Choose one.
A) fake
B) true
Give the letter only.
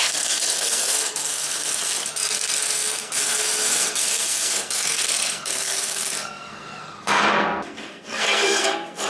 A